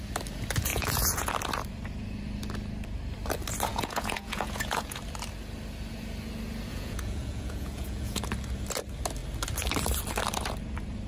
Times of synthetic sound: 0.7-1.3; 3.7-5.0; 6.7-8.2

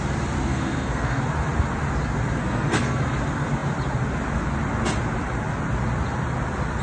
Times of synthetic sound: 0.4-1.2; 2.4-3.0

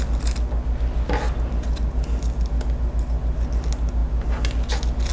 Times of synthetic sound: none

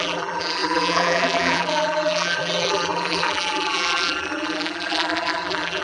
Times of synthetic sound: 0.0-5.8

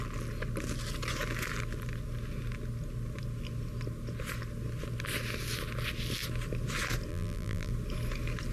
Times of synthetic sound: 7.1-7.7

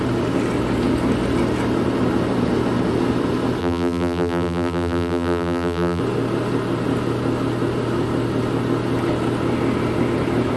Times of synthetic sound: 3.6-6.0

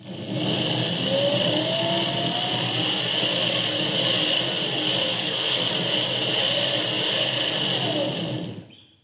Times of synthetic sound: 5.1-5.7